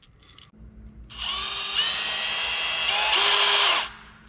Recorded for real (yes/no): yes